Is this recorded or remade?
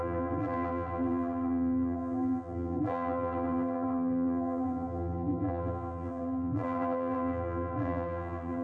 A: remade